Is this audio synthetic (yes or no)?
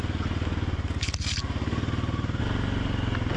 no